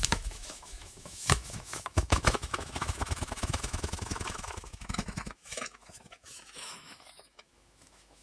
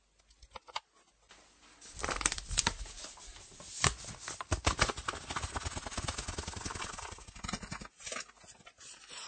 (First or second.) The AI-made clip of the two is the first